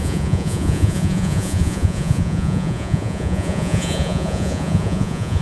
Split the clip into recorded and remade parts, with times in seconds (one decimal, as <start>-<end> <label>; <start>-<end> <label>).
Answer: 0.0-5.4 remade